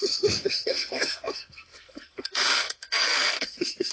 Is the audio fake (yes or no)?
yes